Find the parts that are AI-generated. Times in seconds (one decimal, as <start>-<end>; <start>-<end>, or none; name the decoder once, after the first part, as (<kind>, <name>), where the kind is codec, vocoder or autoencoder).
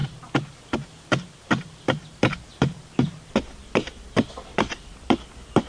none